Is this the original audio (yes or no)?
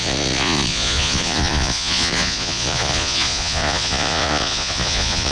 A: no